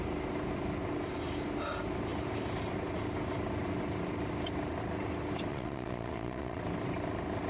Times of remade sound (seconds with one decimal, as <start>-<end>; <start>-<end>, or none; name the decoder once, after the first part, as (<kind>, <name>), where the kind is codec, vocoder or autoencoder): 5.5-6.6 (vocoder, Vocos)

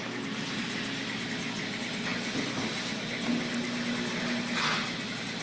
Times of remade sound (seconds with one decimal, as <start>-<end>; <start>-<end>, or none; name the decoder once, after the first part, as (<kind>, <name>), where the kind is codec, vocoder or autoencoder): none

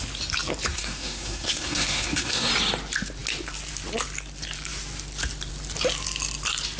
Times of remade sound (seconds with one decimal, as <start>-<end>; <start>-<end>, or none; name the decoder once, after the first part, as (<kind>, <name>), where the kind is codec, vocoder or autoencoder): 0.7-2.5 (codec, SNAC)

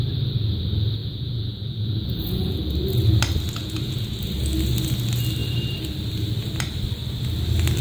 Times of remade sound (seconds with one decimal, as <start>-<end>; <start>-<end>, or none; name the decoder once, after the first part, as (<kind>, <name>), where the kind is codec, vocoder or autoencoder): 1.0-2.6 (vocoder, Vocos); 3.6-4.3

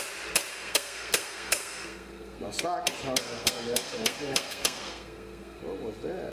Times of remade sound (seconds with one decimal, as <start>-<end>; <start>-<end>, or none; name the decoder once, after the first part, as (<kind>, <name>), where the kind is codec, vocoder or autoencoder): 0.5-2.4 (codec, SNAC); 3.2-5.6

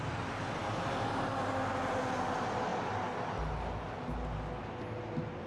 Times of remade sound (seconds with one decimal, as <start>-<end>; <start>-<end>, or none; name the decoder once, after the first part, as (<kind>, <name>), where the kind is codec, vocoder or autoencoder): none